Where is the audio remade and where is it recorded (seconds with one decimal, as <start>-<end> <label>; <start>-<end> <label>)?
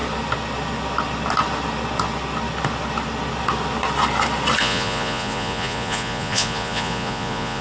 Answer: 0.0-4.6 recorded; 4.6-7.6 remade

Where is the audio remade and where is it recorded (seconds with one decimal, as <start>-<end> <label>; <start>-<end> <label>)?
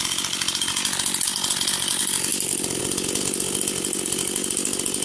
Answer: 0.0-5.0 recorded